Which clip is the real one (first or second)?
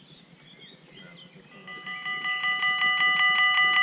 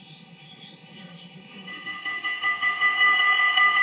first